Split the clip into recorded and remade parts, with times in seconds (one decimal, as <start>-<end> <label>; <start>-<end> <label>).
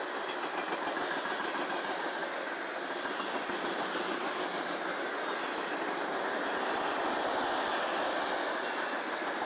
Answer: 0.0-9.5 recorded